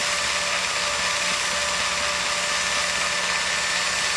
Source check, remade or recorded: recorded